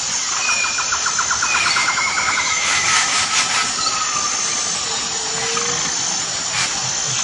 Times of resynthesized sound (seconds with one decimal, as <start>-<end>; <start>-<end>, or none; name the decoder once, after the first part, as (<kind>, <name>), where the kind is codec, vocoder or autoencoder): 1.8-3.4 (autoencoder, DAC-VAE)